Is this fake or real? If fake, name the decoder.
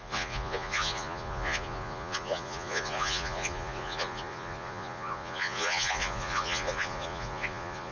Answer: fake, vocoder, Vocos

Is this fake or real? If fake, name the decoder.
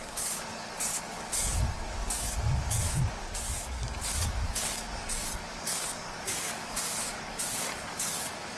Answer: fake, codec, DAC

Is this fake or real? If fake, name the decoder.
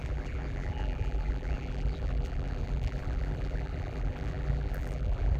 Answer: fake, vocoder, BigVGAN v2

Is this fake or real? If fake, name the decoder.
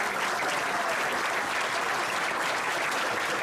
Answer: real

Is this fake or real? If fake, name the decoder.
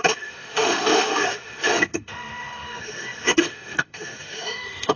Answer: fake, autoencoder, DAC-VAE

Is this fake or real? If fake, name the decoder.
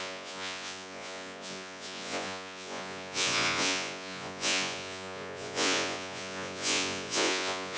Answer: fake, vocoder, Vocos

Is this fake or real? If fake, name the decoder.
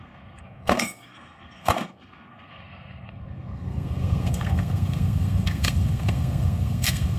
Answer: fake, codec, SNAC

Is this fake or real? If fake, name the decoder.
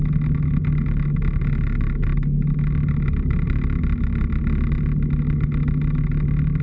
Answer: real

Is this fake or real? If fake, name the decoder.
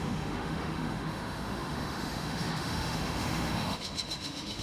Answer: fake, autoencoder, DAC-VAE